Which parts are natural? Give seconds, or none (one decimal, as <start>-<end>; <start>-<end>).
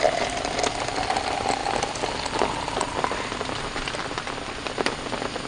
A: 0.0-5.5